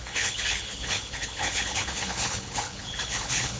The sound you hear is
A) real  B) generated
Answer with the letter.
B